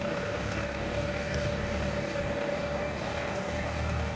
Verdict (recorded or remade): remade